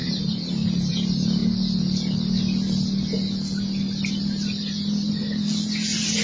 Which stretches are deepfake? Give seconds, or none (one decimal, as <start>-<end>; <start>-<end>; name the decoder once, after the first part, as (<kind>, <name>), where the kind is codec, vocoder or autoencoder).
none